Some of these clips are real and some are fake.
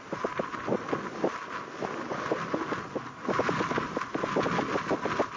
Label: real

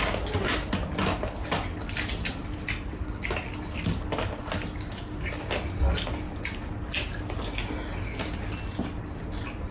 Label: real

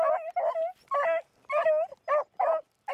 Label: real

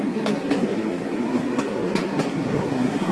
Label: fake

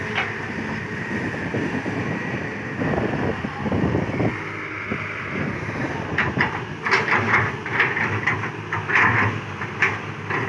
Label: real